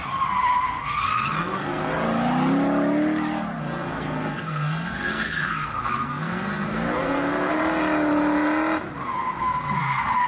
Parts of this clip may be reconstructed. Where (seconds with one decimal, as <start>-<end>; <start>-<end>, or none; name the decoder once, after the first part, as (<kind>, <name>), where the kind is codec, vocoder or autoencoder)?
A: 0.8-1.9 (codec, SNAC); 3.6-7.6; 9.4-10.3